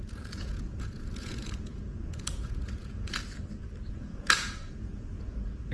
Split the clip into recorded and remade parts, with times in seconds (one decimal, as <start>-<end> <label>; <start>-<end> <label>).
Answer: 0.0-3.2 remade; 3.2-3.9 recorded; 3.9-5.7 remade